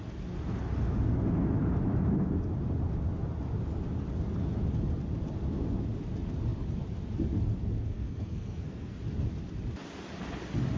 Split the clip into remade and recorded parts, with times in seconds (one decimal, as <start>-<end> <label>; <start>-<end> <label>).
0.0-7.9 recorded; 7.9-9.0 remade; 9.0-10.8 recorded